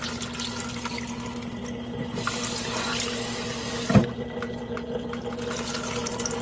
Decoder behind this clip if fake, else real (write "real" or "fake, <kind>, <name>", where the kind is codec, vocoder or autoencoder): real